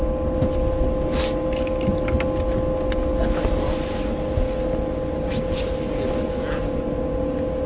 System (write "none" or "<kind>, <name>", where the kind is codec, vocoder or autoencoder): none